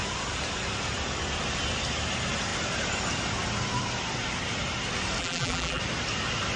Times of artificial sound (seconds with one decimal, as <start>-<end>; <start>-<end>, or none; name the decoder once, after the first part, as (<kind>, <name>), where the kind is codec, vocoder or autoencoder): 5.2-5.8 (vocoder, BigVGAN v2)